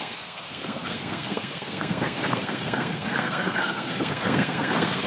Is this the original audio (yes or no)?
no